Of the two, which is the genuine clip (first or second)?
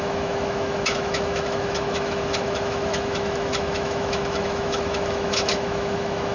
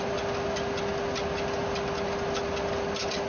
second